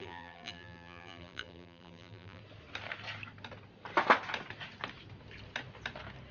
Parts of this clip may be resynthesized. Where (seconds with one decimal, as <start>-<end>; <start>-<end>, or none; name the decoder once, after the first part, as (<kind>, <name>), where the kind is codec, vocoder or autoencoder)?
0.0-2.4 (vocoder, BigVGAN v2)